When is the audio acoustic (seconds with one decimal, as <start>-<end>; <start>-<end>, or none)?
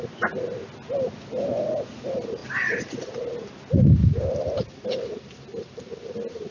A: 0.0-6.5